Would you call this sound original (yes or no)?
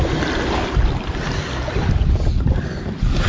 yes